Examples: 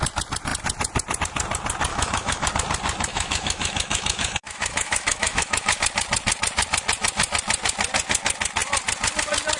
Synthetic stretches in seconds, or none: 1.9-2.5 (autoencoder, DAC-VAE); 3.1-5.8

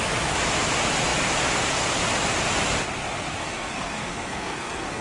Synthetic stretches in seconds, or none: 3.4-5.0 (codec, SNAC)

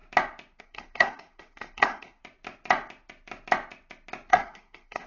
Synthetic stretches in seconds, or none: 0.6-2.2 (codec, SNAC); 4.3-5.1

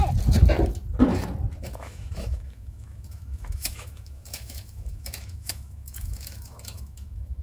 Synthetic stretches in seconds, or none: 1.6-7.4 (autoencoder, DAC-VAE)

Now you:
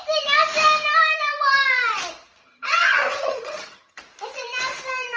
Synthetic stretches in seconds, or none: 2.4-4.0 (vocoder, HiFi-GAN)